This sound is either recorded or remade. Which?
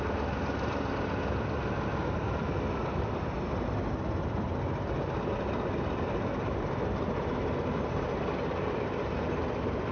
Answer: recorded